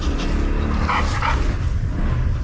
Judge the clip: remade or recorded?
recorded